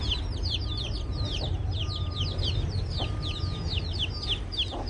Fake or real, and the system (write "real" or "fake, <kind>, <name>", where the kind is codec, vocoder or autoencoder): real